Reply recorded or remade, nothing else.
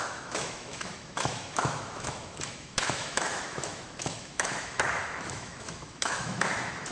remade